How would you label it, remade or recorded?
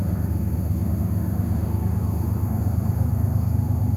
remade